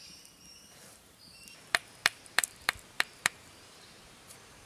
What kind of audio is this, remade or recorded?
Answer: remade